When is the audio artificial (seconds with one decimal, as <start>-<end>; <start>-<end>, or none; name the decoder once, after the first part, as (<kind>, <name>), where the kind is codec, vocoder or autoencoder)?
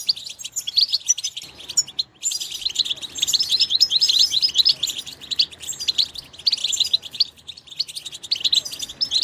0.8-1.4 (vocoder, BigVGAN v2); 2.1-6.1; 6.6-7.7